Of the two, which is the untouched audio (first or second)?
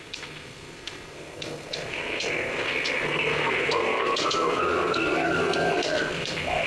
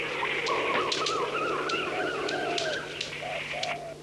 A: second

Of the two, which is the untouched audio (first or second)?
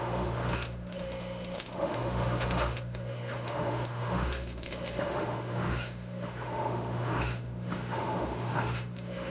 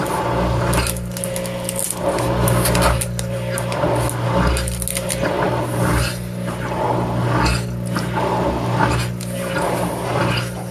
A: second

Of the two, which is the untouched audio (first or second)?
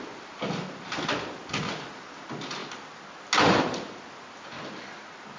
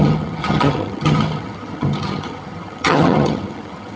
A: first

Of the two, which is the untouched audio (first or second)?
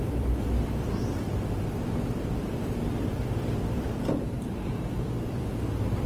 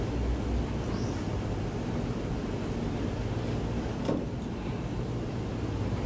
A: second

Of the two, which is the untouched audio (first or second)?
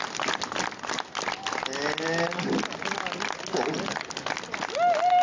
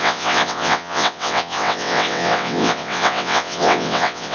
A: first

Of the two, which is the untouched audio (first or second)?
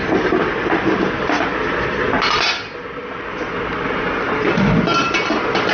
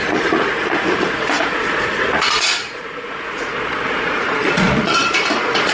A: first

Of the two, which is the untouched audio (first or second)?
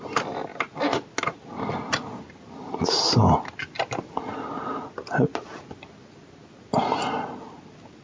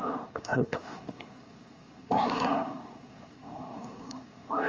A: first